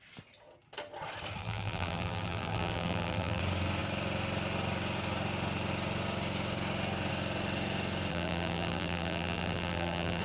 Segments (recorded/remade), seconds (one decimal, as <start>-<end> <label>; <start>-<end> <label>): 0.0-1.4 recorded; 1.4-3.4 remade; 3.4-8.1 recorded; 8.1-10.2 remade